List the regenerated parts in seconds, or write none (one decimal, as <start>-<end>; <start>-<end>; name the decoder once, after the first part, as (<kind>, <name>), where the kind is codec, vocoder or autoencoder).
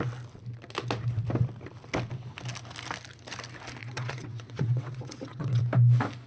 3.8-5.6 (vocoder, WaveNeXt)